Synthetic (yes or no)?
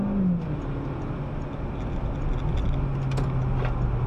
no